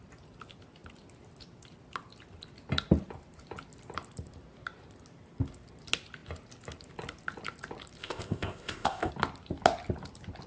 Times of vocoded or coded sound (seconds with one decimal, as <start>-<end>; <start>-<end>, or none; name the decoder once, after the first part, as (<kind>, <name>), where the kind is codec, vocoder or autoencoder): 8.0-9.1 (codec, ZipCodec)